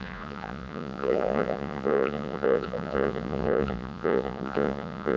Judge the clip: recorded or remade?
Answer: remade